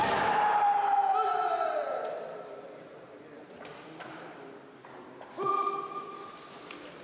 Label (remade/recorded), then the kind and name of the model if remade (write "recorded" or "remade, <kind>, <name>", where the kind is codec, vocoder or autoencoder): recorded